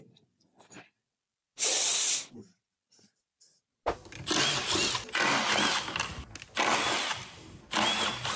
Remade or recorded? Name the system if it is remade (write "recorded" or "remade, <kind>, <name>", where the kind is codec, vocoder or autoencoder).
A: recorded